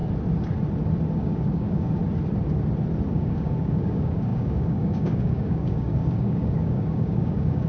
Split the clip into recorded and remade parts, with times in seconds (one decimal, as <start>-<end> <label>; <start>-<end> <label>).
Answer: 0.0-1.2 recorded; 1.2-2.0 remade; 2.0-3.1 recorded; 3.1-7.7 remade